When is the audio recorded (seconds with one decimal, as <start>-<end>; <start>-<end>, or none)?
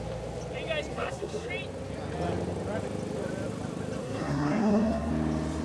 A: 0.0-0.9; 1.5-4.0; 5.1-5.6